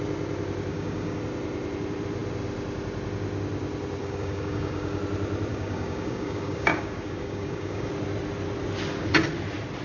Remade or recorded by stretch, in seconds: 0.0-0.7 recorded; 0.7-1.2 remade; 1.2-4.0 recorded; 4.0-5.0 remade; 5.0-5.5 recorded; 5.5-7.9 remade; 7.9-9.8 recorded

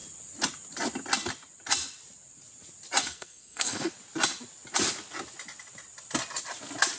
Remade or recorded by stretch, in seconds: 0.0-3.0 recorded; 3.0-3.9 remade; 3.9-7.0 recorded

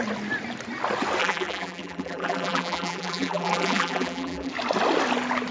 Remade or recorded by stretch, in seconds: 0.0-1.2 recorded; 1.2-4.5 remade; 4.5-5.5 recorded

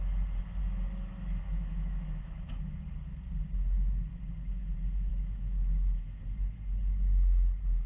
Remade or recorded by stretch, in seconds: 0.0-0.6 recorded; 0.6-2.7 remade; 2.7-5.1 recorded; 5.1-6.2 remade; 6.2-7.9 recorded

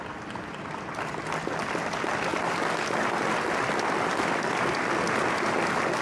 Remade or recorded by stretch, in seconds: 0.0-6.0 recorded

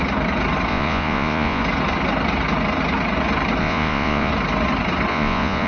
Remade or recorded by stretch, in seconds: 0.0-0.7 recorded; 0.7-1.6 remade; 1.6-3.6 recorded; 3.6-4.3 remade; 4.3-5.1 recorded; 5.1-5.7 remade

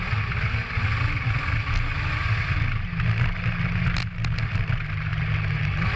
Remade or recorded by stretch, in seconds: 0.0-6.0 recorded

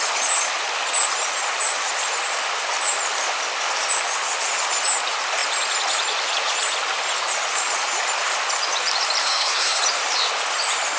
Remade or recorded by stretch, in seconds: 0.0-9.2 recorded; 9.2-9.8 remade; 9.8-11.0 recorded